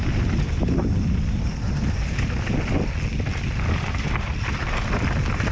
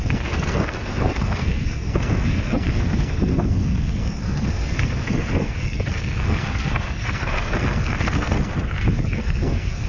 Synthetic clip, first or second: second